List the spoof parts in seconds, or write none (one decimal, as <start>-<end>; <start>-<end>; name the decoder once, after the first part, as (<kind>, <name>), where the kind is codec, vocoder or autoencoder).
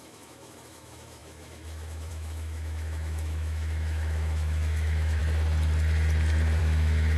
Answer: 0.0-5.2 (autoencoder, DAC-VAE); 6.6-7.2